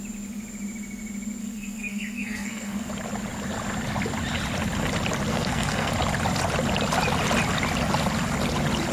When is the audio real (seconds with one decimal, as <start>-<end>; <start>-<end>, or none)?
0.0-1.4; 2.9-5.3; 5.9-8.9